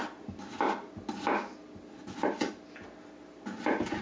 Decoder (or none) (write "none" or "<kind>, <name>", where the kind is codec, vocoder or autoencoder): none